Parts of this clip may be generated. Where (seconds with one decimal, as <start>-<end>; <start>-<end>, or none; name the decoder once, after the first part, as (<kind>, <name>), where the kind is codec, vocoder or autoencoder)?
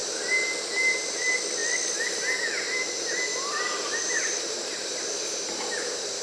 3.3-6.2 (vocoder, BigVGAN v2)